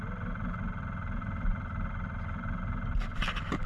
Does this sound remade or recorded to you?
recorded